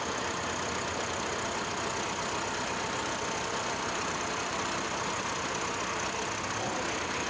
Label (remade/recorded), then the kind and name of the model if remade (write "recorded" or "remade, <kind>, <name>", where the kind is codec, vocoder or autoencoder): recorded